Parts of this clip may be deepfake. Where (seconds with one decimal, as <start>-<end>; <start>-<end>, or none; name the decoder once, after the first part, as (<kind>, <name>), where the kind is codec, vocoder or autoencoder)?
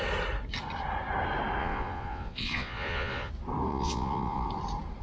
1.6-3.3 (vocoder, Vocos); 3.7-4.5